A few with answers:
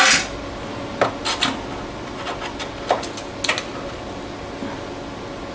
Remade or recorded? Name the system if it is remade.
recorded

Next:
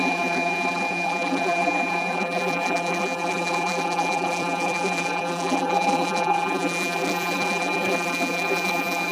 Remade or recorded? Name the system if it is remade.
remade, vocoder, BigVGAN v2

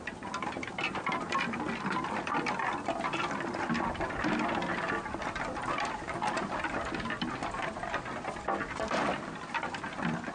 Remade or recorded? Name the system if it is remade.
recorded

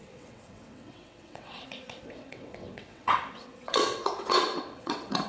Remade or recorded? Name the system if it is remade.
remade, vocoder, WaveNeXt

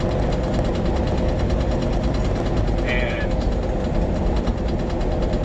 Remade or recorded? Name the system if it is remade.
recorded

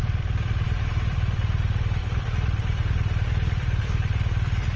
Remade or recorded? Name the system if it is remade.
remade, vocoder, BigVGAN v2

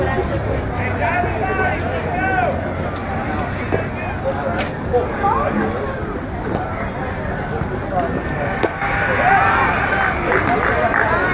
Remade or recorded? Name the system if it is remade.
recorded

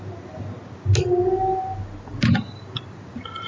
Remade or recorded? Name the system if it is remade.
recorded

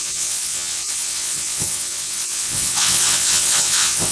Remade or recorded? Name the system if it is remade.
remade, vocoder, WaveNeXt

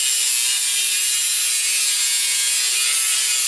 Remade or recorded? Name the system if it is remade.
recorded